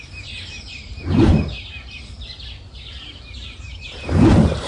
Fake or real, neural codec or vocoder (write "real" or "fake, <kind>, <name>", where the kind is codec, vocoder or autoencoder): fake, vocoder, BigVGAN v2